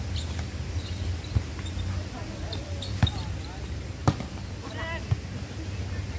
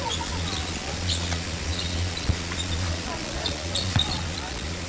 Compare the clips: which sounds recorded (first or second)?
first